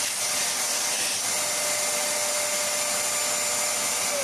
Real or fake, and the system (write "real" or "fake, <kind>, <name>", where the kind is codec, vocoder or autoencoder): real